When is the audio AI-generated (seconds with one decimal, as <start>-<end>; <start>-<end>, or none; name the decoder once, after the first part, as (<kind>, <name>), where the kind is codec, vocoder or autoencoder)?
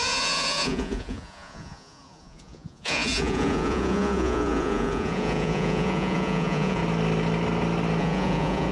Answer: 0.0-6.8 (vocoder, Vocos); 8.0-8.7